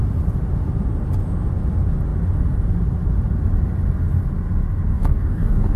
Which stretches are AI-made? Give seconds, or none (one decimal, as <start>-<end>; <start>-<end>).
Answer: 4.9-5.8